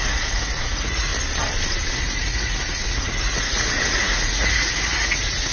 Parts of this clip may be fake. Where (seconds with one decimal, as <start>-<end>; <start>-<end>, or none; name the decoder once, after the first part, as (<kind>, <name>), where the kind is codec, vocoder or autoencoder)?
0.0-1.1 (vocoder, Vocos); 1.9-5.5